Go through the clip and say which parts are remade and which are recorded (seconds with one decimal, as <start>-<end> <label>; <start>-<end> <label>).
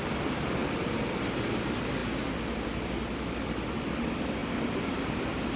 0.0-4.4 remade; 4.4-4.9 recorded; 4.9-5.6 remade